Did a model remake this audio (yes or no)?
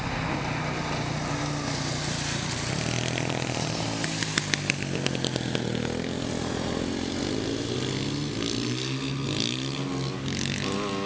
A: no